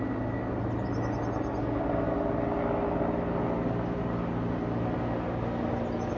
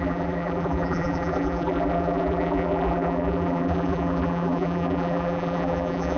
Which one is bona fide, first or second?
first